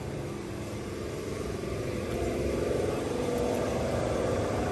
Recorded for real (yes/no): no